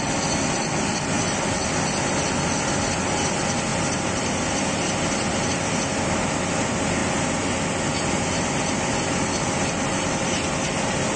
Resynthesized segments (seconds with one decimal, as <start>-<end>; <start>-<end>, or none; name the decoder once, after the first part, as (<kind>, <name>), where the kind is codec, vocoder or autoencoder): none